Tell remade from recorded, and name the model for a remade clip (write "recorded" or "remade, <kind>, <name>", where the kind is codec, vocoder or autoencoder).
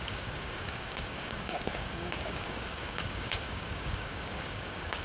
remade, codec, DAC